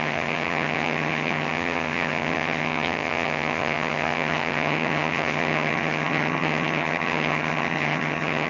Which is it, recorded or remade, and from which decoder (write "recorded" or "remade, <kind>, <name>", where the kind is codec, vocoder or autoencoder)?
remade, vocoder, HiFi-GAN